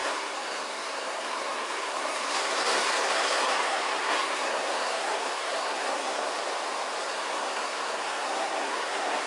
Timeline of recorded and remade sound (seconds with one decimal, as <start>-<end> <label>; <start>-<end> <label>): 0.0-6.3 remade; 6.3-7.0 recorded; 7.0-9.3 remade